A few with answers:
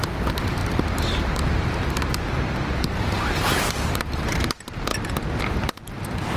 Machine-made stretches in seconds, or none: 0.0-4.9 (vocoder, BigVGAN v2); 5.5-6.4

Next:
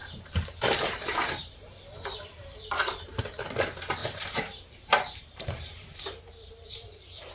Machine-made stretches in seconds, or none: 0.0-3.2 (vocoder, BigVGAN v2); 4.0-7.3

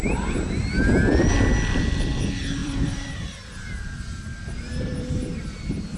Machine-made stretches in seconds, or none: 2.6-5.4 (vocoder, BigVGAN v2)

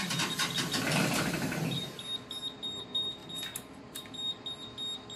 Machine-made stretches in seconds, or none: none

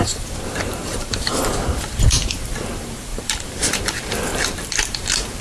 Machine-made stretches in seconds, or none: 0.0-5.4 (vocoder, BigVGAN v2)